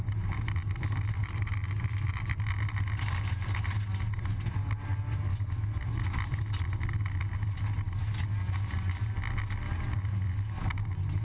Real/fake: real